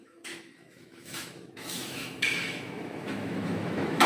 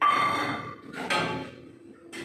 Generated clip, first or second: first